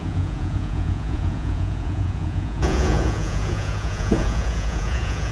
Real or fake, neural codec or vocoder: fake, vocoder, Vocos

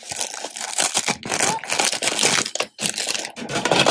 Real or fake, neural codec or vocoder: real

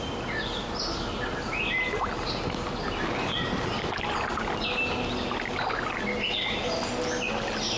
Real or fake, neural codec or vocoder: real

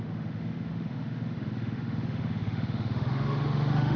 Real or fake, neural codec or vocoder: fake, autoencoder, DAC-VAE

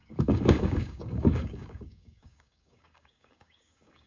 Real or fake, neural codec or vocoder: fake, codec, DAC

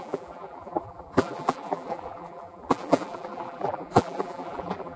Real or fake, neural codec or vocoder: fake, vocoder, BigVGAN v2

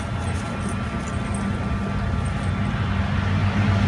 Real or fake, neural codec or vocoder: real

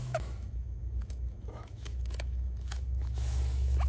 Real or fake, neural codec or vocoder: fake, autoencoder, DAC-VAE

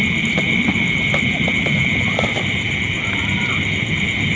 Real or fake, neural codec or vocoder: real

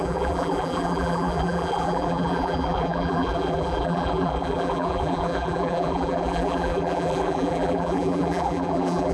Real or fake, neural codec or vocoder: fake, vocoder, BigVGAN v2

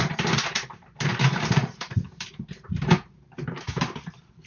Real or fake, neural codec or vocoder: fake, vocoder, BigVGAN v2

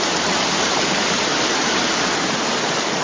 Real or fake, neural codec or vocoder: real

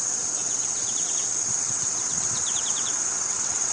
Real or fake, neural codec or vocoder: fake, vocoder, WaveNeXt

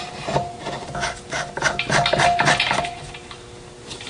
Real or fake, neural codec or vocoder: real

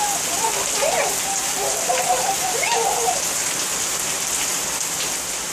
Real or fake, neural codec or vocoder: real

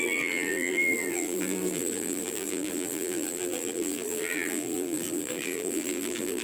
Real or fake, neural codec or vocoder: fake, vocoder, BigVGAN v2